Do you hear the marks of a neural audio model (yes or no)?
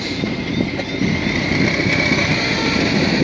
no